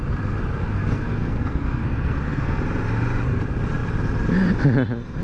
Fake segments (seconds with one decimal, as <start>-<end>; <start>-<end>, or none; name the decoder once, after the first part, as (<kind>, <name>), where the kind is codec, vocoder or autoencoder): 0.6-2.6 (codec, SNAC)

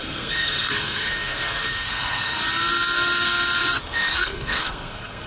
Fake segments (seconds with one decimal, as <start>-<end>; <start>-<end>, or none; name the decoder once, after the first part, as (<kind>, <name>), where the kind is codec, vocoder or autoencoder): 0.0-2.4 (codec, SNAC); 3.8-5.3

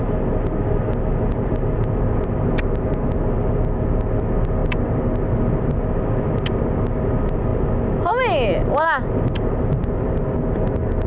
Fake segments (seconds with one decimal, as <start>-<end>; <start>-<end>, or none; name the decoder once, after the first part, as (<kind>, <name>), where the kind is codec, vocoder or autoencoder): none

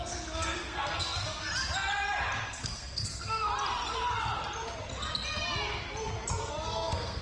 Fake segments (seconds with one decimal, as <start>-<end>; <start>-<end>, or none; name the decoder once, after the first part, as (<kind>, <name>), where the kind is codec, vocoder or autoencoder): 0.0-1.5 (codec, SNAC); 2.5-3.5; 6.3-7.2

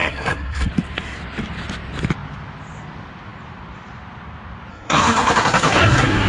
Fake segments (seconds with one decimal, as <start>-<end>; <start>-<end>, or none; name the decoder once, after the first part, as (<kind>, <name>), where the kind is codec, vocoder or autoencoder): 0.0-0.7 (codec, SNAC); 4.7-6.3

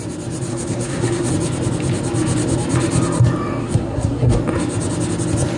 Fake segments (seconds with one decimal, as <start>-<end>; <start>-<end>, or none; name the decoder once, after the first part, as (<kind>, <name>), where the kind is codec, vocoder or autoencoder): 0.5-1.3 (codec, SNAC); 3.6-4.4